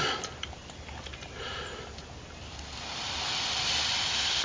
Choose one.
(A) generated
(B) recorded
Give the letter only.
B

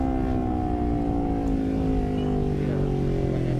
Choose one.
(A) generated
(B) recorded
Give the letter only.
B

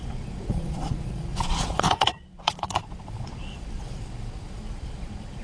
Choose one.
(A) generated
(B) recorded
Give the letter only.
A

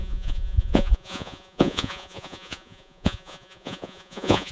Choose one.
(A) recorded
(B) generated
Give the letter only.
B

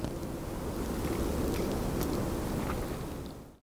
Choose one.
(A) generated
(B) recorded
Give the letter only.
B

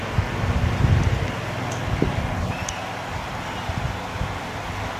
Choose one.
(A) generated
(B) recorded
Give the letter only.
B